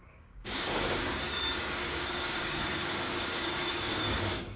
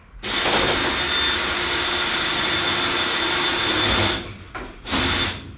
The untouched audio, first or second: second